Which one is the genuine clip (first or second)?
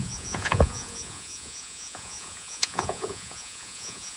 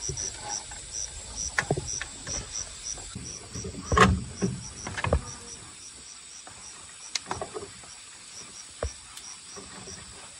second